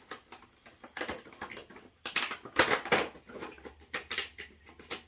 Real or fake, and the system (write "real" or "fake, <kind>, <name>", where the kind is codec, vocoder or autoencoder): real